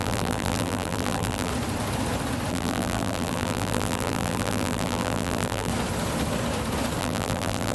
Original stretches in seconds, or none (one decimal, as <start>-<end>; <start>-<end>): 1.5-2.5; 5.7-7.0